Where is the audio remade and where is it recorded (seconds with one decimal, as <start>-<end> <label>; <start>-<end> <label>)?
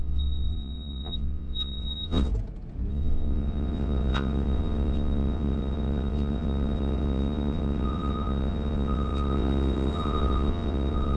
0.0-2.3 remade; 2.3-2.9 recorded; 2.9-11.2 remade